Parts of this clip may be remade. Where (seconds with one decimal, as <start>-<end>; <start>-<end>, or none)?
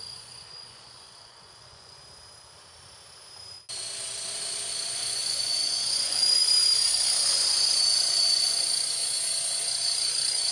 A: 0.0-2.0; 4.7-6.2; 7.3-9.0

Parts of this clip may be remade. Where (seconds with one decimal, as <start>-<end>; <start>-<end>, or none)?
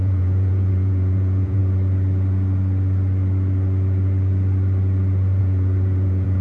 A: 0.0-1.6; 5.4-6.4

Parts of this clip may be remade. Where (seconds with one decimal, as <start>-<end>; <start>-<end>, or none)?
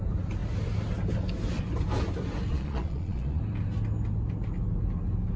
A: 2.5-3.4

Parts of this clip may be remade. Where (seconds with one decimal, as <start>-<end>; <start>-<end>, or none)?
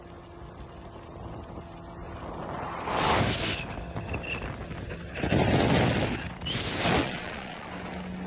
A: 7.0-7.7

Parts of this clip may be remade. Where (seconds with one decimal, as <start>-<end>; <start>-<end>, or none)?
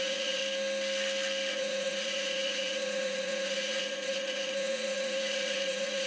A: 0.0-0.4; 1.5-6.1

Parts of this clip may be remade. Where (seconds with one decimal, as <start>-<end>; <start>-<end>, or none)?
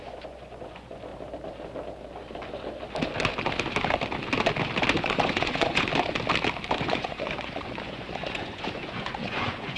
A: 0.0-1.1; 5.0-5.9; 6.8-9.8